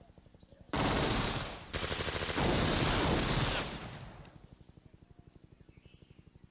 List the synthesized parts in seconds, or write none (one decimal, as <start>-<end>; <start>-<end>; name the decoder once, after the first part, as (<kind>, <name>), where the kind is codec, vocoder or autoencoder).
0.5-2.2 (vocoder, BigVGAN v2)